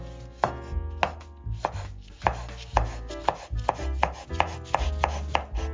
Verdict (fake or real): real